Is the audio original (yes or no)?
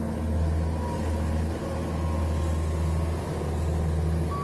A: yes